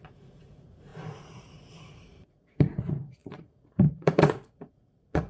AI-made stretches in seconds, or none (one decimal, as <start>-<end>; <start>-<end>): 0.0-5.3